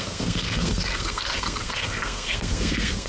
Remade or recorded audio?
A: remade